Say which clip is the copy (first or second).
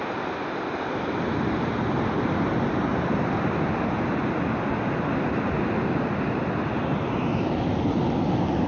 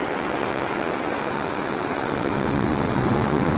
second